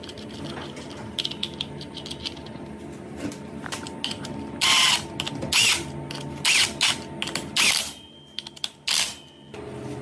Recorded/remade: recorded